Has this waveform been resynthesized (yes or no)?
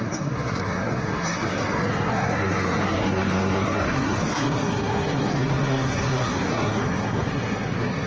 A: yes